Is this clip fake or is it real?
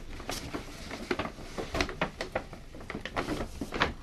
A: real